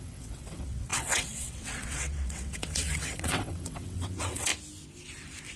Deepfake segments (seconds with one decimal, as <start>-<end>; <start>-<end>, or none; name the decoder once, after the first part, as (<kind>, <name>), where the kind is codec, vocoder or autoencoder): 0.0-4.5 (vocoder, WaveNeXt)